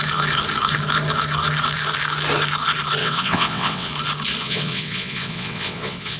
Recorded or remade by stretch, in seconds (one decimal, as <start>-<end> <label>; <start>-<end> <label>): 0.0-3.0 recorded; 3.0-3.9 remade; 3.9-4.4 recorded; 4.4-6.2 remade